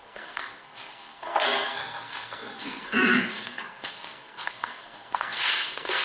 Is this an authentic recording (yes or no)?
no